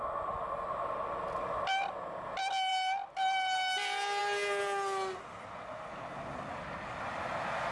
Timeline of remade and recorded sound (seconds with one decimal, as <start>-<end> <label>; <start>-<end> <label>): 0.0-7.7 recorded